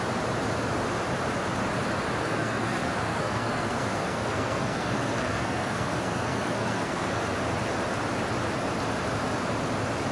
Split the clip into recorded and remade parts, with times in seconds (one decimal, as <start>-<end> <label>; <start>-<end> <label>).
0.0-2.2 recorded; 2.2-7.2 remade; 7.2-10.1 recorded